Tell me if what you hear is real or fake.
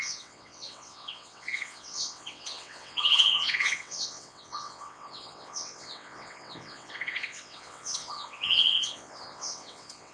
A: fake